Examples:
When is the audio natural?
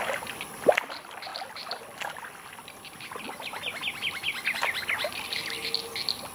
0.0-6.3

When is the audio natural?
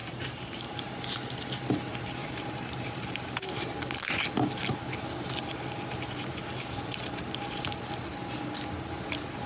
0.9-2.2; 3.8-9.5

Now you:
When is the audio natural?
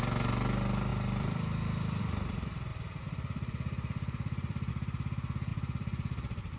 0.0-0.9; 2.0-2.7; 4.7-5.5